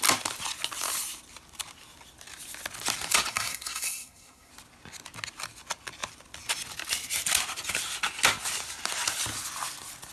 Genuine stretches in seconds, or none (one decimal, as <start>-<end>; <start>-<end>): 0.0-3.3; 4.5-10.1